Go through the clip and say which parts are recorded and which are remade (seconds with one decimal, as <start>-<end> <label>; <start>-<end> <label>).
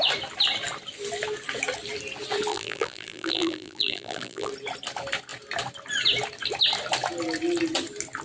0.0-2.5 recorded; 2.5-4.5 remade; 4.5-8.2 recorded